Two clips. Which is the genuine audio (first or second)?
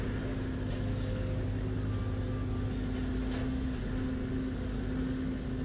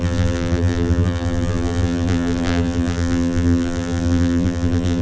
first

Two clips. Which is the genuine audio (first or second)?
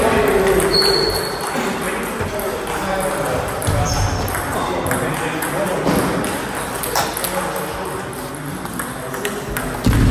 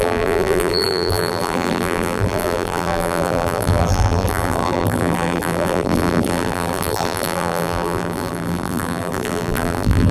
first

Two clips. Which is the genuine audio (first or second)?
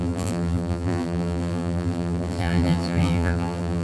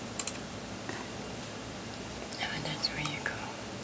second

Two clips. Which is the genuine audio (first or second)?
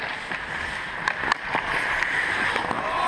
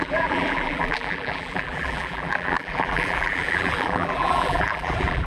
first